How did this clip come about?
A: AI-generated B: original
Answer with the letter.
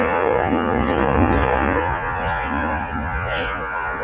A